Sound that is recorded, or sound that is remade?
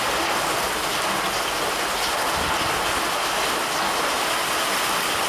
recorded